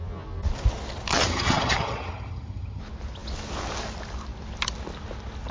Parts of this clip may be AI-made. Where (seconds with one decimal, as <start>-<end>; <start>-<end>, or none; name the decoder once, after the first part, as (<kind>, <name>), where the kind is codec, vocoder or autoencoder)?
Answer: 1.1-2.8 (vocoder, HiFi-GAN)